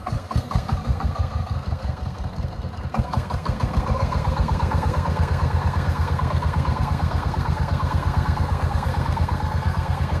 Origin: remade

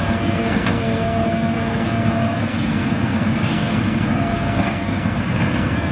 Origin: remade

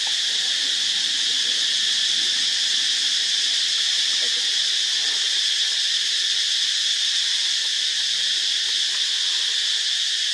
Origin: recorded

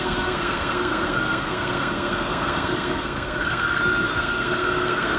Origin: remade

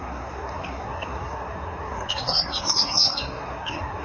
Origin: remade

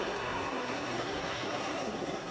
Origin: remade